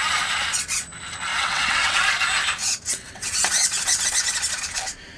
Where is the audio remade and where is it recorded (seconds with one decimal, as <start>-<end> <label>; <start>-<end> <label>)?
0.0-1.3 recorded; 1.3-2.0 remade; 2.0-2.9 recorded; 2.9-4.3 remade; 4.3-5.2 recorded